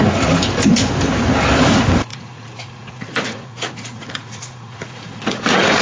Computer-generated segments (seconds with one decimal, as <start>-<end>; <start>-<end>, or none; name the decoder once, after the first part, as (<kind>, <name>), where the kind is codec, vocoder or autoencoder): 2.1-5.8 (vocoder, Vocos)